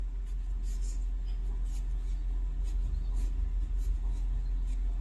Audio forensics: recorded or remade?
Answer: recorded